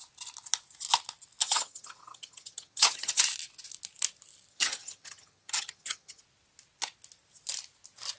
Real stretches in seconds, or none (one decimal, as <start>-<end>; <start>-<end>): 0.0-1.4; 3.2-4.5; 6.2-8.2